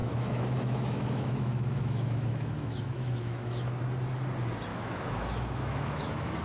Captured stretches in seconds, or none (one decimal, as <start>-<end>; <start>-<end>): 3.8-4.7